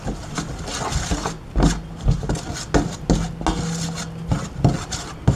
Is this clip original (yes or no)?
yes